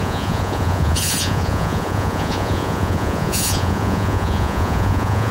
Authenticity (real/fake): fake